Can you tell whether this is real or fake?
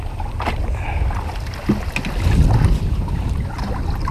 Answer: real